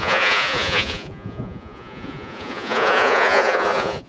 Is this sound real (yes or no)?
no